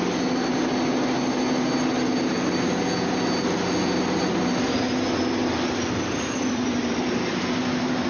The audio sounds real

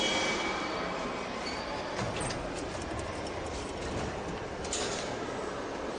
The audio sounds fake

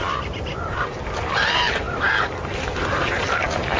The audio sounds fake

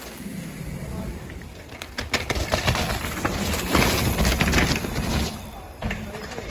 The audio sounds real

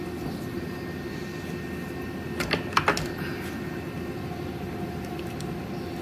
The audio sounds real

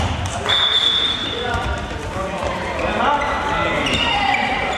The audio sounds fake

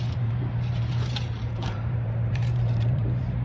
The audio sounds fake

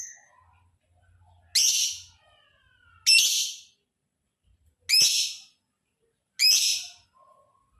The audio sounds real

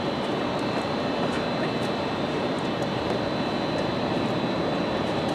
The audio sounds fake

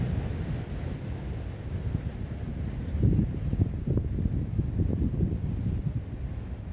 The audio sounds real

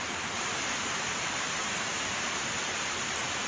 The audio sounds fake